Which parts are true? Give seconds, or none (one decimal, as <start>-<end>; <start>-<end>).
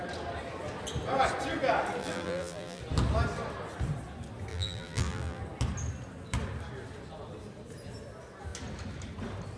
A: 0.0-2.0; 2.8-4.5; 5.4-9.6